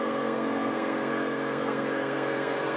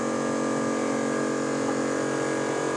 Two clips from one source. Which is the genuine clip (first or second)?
second